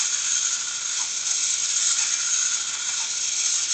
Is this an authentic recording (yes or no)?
yes